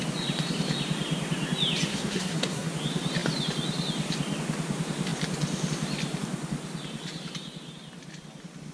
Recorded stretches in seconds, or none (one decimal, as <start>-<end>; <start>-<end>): 0.0-1.9; 2.7-8.7